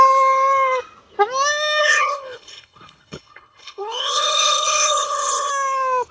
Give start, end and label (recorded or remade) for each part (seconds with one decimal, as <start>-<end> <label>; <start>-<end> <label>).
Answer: 0.0-1.8 recorded; 1.8-5.5 remade; 5.5-6.1 recorded